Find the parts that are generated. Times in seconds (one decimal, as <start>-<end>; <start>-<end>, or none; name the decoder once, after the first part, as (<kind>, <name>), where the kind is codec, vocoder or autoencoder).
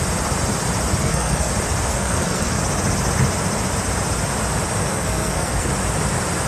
1.0-1.5 (codec, SNAC); 1.9-2.6; 4.8-5.7